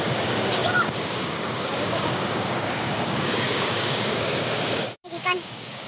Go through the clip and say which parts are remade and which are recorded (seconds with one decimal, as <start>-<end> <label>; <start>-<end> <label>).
0.0-5.9 remade